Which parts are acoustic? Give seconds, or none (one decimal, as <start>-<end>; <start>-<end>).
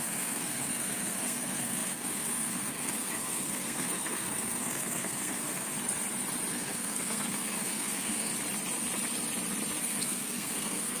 5.7-6.5; 8.3-9.8